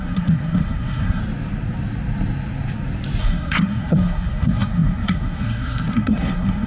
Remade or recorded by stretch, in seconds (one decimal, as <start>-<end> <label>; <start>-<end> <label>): 0.0-1.2 remade; 1.2-3.2 recorded; 3.2-6.7 remade